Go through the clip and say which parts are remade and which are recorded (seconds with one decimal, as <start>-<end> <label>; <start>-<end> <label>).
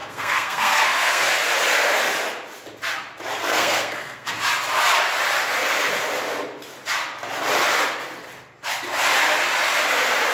0.0-1.3 remade; 1.3-3.4 recorded; 3.4-4.3 remade; 4.3-10.3 recorded